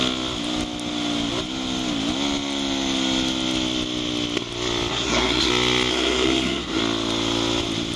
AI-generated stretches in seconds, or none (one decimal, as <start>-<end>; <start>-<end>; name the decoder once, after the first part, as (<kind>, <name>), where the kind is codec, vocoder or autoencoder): 4.9-5.5 (codec, SNAC); 5.9-6.8